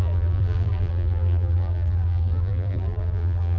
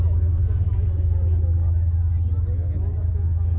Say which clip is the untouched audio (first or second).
second